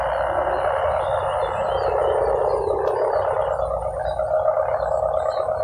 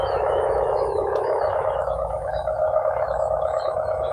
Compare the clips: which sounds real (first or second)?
first